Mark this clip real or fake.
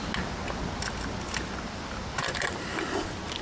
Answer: real